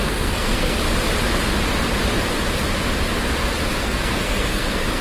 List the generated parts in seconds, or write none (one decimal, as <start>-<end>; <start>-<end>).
0.0-0.8; 3.8-5.0